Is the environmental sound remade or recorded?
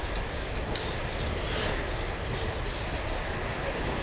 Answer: recorded